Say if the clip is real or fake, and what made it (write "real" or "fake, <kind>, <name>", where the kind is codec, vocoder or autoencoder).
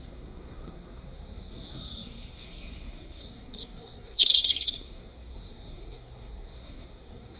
fake, codec, SNAC